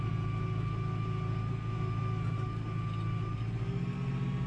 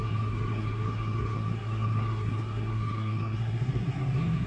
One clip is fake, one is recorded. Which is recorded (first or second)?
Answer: first